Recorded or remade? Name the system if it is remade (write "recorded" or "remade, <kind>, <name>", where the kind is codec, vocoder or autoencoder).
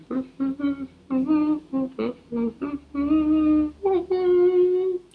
recorded